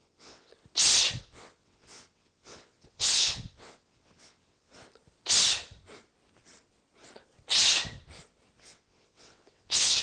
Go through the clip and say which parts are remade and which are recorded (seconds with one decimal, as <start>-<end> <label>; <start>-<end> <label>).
0.0-0.5 remade; 0.5-1.2 recorded; 1.2-4.7 remade; 4.7-8.6 recorded; 8.6-10.0 remade